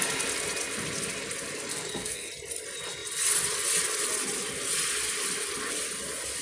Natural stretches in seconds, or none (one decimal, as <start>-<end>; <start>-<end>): 0.0-1.7; 2.3-6.4